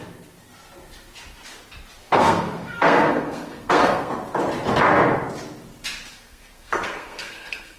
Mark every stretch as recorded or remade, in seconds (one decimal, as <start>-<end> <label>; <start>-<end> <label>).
0.0-2.0 recorded; 2.0-4.1 remade; 4.1-6.1 recorded; 6.1-7.8 remade